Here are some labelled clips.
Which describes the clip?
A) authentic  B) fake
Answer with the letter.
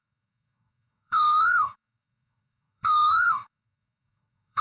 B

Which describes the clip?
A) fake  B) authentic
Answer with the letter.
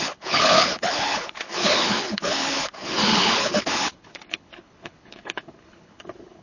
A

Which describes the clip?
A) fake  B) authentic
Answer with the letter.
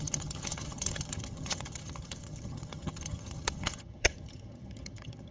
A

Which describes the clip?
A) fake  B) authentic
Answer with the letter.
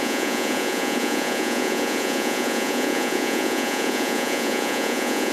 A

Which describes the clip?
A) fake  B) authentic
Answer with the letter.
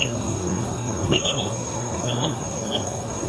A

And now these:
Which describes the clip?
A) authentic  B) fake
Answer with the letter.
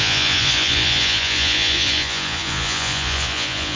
B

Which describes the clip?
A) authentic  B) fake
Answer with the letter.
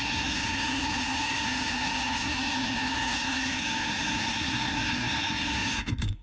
B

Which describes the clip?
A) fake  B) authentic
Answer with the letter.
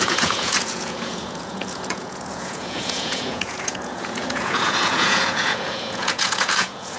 A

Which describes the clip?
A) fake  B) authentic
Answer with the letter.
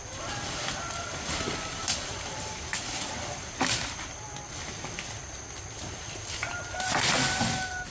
B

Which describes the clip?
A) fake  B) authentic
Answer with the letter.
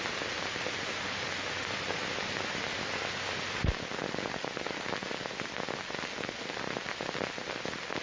B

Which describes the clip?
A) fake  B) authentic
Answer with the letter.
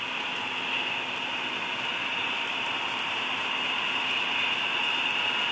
B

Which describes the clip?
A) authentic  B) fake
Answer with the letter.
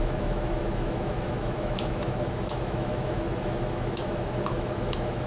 B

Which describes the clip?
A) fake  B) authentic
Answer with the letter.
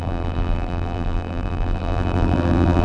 A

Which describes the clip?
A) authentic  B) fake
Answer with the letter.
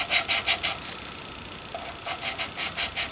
A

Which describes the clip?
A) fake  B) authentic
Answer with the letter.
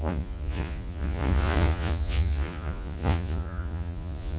A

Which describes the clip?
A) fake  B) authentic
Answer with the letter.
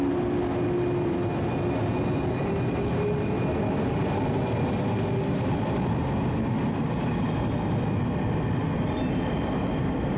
B